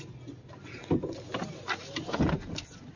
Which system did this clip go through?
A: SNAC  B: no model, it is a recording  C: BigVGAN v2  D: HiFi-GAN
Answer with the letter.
B